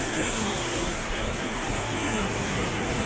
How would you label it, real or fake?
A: fake